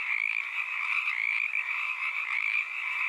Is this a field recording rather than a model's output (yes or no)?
no